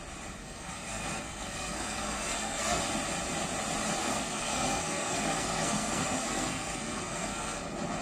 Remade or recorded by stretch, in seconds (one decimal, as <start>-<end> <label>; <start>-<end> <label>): 0.0-0.4 recorded; 0.4-2.8 remade; 2.8-4.0 recorded; 4.0-7.6 remade; 7.6-8.0 recorded